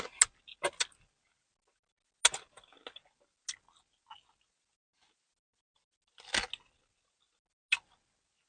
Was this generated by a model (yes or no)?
no